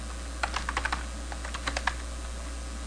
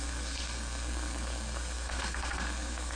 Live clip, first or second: first